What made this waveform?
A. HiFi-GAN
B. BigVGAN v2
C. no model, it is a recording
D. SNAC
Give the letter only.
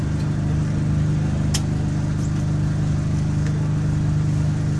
C